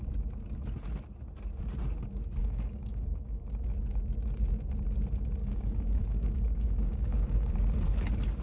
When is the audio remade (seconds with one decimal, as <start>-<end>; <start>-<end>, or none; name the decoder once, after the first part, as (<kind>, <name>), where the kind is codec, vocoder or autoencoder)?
2.4-3.5 (codec, DAC); 5.4-7.5